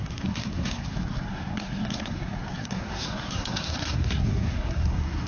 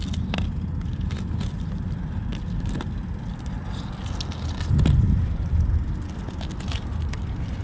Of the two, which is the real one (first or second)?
second